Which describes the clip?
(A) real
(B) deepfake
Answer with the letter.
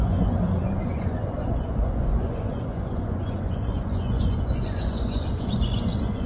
B